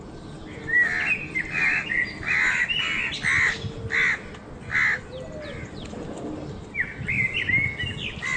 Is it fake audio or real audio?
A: real